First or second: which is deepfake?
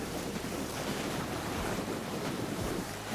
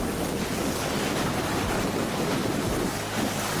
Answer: first